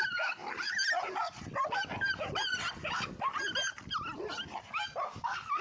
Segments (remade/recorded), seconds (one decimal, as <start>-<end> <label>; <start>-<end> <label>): 0.0-5.6 recorded